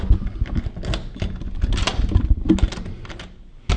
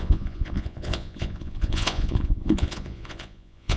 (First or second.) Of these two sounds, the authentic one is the first